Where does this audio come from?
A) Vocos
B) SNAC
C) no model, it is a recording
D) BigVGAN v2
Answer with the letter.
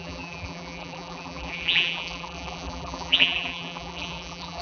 D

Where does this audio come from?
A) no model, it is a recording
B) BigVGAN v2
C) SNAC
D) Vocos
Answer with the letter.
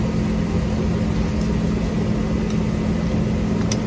A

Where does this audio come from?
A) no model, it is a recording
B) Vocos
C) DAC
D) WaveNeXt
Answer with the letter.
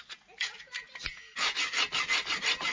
A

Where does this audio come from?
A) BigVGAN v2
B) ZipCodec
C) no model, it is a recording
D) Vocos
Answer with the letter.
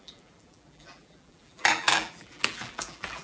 A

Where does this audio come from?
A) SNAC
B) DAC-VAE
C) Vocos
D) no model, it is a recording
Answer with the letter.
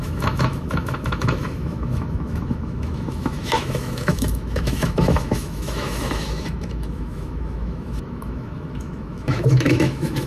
B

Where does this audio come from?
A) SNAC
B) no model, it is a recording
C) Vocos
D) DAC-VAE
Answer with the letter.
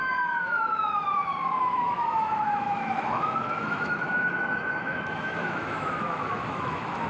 D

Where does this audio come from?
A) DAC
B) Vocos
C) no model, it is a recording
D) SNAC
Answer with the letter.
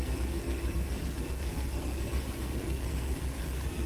D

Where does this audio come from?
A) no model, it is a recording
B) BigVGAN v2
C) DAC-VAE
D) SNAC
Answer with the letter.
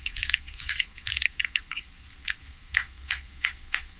D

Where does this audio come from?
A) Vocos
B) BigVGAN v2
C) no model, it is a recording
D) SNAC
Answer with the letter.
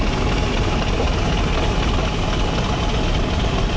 C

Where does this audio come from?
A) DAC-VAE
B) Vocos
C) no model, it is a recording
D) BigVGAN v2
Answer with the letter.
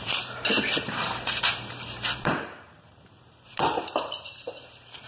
D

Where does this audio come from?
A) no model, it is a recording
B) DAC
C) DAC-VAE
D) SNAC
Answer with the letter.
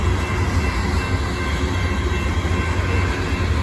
A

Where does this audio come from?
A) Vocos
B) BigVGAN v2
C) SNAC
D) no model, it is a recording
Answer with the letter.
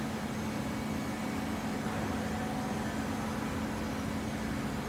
D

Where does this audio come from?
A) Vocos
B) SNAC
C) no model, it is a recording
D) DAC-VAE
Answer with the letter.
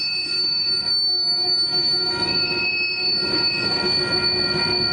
C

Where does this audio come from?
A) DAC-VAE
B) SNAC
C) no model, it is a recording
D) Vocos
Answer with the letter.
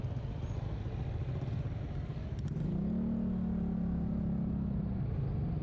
C